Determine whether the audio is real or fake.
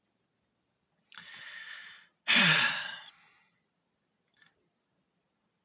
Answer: real